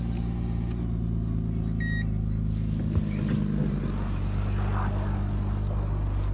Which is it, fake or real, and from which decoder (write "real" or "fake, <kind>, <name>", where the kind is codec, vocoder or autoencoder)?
real